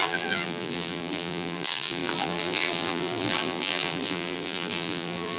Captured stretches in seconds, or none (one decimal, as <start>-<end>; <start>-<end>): none